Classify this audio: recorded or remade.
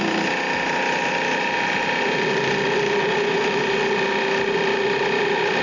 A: recorded